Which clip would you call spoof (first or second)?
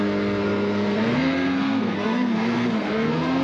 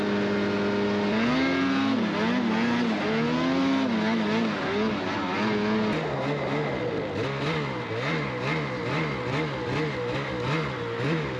first